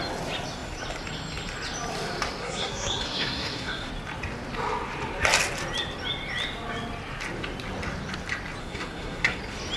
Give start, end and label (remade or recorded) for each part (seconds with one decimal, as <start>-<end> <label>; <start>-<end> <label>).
0.0-2.4 recorded; 2.4-3.9 remade; 3.9-8.6 recorded; 8.6-9.4 remade; 9.4-9.8 recorded